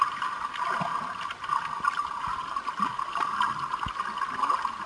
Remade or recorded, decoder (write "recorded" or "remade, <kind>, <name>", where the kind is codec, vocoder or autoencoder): recorded